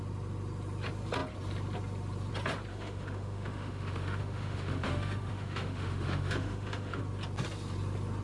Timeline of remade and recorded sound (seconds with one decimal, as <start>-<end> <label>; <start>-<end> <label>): 0.0-2.7 recorded; 2.7-7.0 remade; 7.0-8.2 recorded